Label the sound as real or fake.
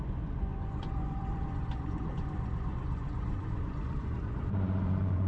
fake